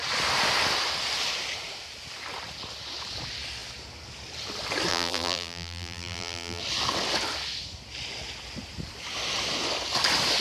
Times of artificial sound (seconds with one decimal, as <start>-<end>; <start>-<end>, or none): 4.9-6.6